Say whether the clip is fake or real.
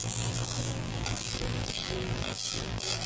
fake